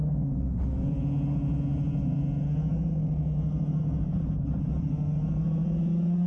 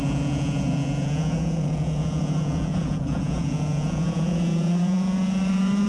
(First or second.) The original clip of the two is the first